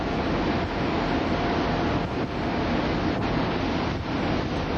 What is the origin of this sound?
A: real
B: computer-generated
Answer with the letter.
A